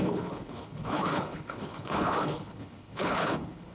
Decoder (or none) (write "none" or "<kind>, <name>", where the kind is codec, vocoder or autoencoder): codec, HILCodec